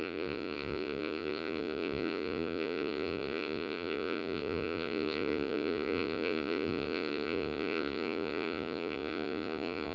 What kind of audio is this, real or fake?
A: fake